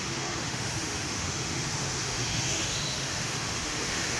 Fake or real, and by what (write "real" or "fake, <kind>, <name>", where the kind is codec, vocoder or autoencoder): fake, autoencoder, DAC-VAE